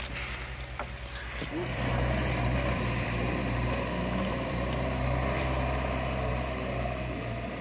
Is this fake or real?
fake